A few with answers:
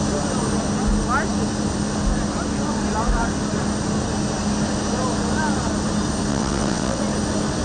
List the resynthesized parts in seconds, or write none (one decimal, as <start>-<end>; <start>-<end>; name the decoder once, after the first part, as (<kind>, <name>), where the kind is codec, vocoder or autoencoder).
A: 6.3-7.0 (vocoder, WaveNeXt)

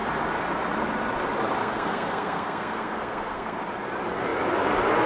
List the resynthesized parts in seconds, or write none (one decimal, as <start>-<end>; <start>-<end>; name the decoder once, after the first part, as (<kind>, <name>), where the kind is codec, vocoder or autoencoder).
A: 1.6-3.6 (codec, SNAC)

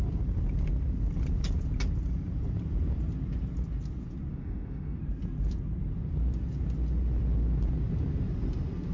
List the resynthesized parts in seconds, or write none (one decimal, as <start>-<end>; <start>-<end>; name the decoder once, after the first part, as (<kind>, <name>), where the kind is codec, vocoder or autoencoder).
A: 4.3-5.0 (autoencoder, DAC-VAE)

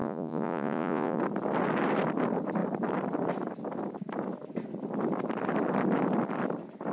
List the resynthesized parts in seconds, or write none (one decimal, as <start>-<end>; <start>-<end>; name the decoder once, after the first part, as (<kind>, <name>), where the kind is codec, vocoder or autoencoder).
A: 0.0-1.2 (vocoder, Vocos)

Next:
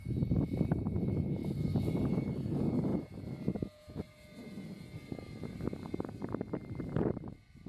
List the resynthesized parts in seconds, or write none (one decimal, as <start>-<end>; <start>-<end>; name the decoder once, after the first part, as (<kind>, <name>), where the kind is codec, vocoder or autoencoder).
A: 0.0-7.7 (vocoder, BigVGAN v2)